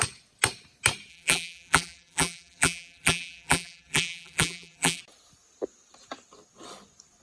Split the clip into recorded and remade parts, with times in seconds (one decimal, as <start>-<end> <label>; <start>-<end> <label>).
0.0-1.1 recorded; 1.1-5.0 remade; 5.0-7.2 recorded